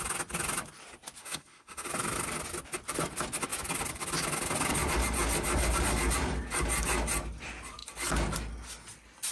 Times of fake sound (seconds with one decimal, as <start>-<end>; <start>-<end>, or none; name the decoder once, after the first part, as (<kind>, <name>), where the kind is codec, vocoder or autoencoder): 1.2-1.9 (autoencoder, DAC-VAE)